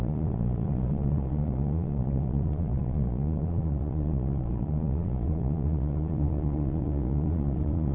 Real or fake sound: fake